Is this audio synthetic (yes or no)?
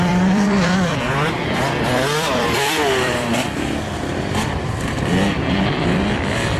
yes